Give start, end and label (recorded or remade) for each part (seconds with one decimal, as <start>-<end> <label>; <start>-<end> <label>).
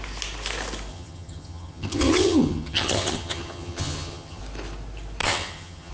0.0-0.9 recorded; 0.9-4.4 remade; 4.4-5.2 recorded; 5.2-5.9 remade